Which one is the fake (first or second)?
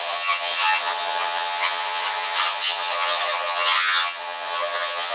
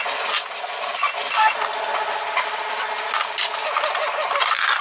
first